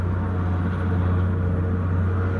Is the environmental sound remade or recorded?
recorded